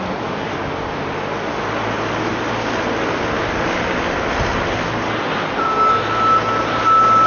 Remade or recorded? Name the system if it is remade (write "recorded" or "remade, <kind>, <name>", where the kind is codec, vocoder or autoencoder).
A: recorded